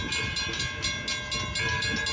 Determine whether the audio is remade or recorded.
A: recorded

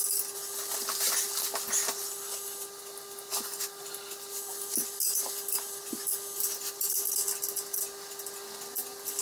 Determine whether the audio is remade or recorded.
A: recorded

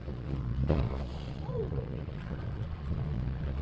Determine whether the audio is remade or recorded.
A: remade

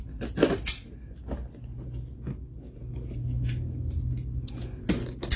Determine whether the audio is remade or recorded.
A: recorded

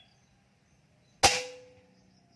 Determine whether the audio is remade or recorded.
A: recorded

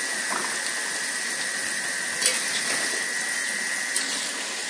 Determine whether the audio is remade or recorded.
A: recorded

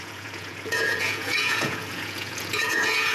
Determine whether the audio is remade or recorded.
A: remade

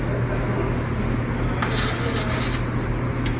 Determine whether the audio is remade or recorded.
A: recorded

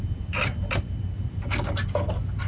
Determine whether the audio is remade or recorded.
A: recorded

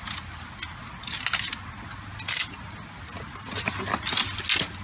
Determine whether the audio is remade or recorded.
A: recorded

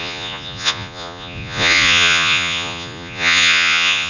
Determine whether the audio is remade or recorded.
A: remade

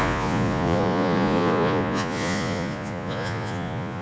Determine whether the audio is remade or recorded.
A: remade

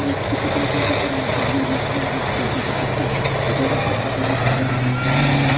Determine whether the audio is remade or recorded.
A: recorded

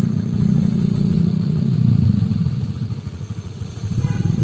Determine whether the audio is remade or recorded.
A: remade